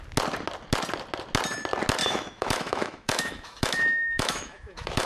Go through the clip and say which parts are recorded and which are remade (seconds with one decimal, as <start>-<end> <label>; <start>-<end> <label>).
0.0-2.0 recorded; 2.0-5.1 remade